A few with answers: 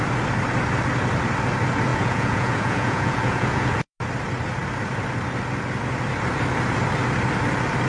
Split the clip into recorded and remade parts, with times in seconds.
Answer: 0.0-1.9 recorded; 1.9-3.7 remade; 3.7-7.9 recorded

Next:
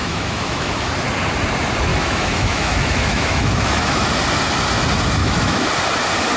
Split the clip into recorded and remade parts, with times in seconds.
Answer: 0.0-0.9 remade; 0.9-1.9 recorded; 1.9-4.1 remade; 4.1-5.2 recorded; 5.2-5.7 remade; 5.7-6.4 recorded

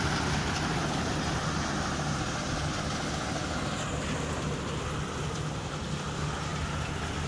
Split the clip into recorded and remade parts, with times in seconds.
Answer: 0.0-7.3 recorded

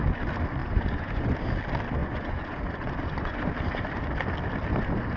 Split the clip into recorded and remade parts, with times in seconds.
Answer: 0.0-0.6 recorded; 0.6-1.4 remade; 1.4-2.0 recorded; 2.0-3.5 remade; 3.5-5.2 recorded